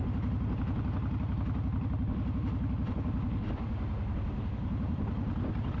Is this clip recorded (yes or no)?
yes